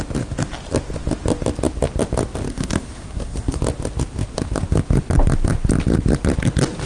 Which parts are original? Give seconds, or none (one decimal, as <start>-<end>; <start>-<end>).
0.0-2.5; 3.6-6.9